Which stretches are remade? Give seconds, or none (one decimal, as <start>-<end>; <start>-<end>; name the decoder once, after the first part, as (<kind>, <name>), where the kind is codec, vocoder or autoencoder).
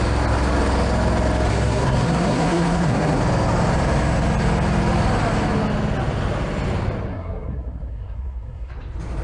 1.5-3.2 (codec, SNAC); 7.1-8.7